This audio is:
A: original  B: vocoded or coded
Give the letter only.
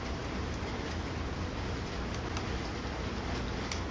A